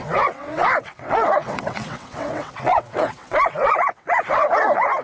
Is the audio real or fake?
fake